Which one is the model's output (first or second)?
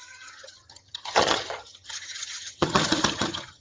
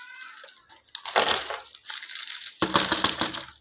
first